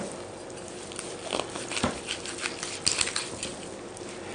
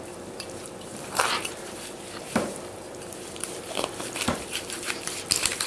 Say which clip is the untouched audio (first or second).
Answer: first